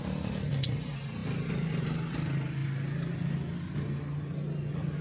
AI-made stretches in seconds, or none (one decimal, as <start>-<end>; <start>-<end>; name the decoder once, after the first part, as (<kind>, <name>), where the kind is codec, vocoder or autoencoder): none